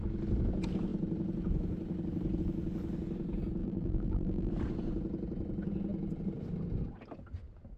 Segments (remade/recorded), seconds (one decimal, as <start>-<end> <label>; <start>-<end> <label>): 0.0-3.6 recorded; 3.6-4.5 remade; 4.5-7.8 recorded